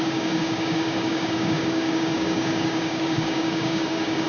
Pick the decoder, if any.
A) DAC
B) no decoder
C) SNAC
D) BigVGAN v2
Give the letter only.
A